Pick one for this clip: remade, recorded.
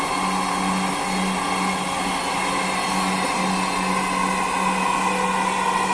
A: recorded